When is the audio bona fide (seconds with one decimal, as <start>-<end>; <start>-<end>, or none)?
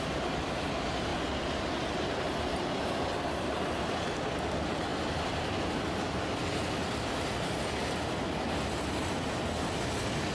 0.0-1.1; 1.6-10.3